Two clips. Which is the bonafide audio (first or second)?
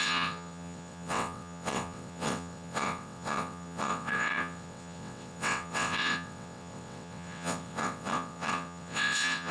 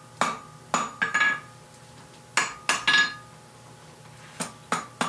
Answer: second